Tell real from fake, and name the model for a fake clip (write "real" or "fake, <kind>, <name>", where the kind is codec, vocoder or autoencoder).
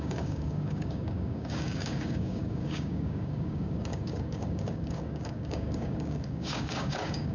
fake, codec, DAC